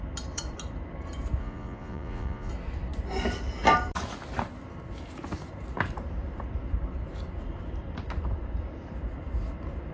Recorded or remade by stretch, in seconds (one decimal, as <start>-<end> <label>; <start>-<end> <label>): 0.0-1.4 recorded; 1.4-2.5 remade; 2.5-9.9 recorded